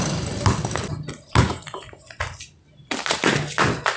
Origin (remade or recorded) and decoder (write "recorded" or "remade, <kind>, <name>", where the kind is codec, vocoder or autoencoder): recorded